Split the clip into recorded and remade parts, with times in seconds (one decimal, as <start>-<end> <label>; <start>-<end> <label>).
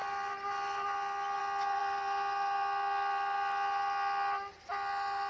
0.0-5.3 recorded